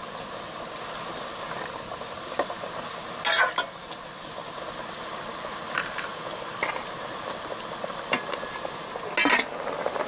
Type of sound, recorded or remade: recorded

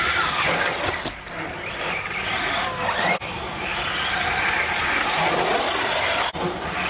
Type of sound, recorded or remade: recorded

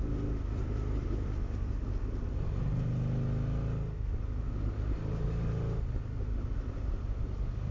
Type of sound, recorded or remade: recorded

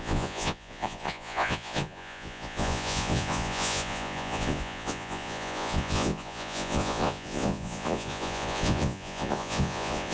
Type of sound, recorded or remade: remade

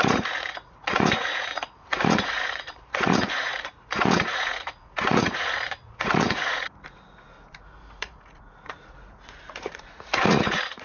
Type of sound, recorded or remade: remade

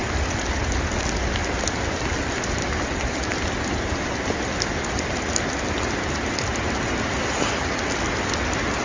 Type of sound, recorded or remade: recorded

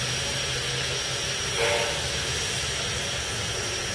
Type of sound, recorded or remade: recorded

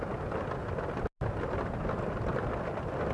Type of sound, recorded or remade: recorded